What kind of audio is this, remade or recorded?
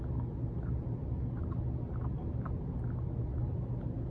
recorded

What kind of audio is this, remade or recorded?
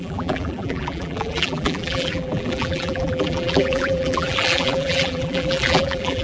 remade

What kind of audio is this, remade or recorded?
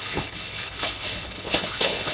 remade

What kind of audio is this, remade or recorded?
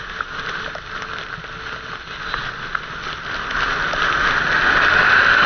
recorded